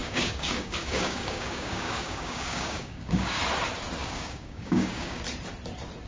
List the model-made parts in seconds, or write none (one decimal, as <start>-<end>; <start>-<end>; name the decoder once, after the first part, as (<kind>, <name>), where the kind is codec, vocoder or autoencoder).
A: 0.0-3.4 (codec, DAC); 4.0-5.2